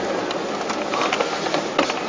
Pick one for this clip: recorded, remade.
recorded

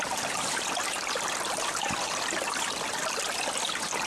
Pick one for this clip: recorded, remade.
recorded